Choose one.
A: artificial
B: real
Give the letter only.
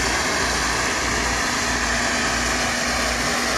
B